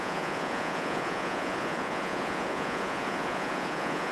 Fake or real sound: fake